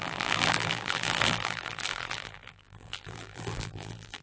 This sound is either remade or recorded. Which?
remade